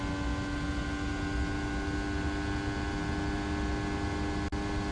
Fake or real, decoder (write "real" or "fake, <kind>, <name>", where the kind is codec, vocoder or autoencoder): real